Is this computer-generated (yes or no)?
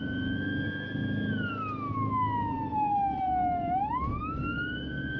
no